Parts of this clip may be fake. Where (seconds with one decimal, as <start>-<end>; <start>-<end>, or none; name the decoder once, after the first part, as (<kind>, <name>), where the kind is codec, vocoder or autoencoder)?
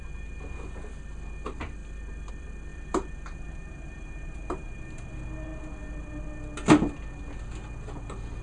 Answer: 2.7-5.1 (vocoder, BigVGAN v2)